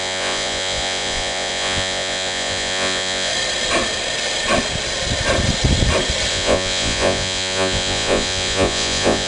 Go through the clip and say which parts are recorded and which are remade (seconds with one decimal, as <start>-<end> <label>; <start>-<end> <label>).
0.0-3.3 remade; 3.3-6.3 recorded; 6.3-9.3 remade